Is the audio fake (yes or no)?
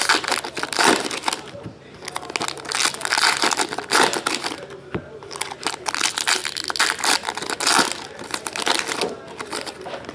no